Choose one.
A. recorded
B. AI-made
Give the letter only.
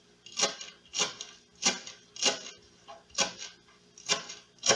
A